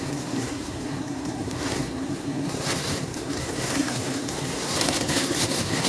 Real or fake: fake